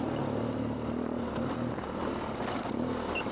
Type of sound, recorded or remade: recorded